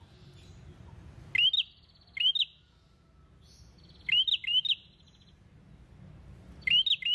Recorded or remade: recorded